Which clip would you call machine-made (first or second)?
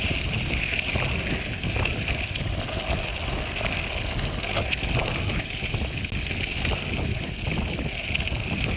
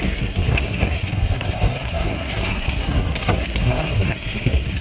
second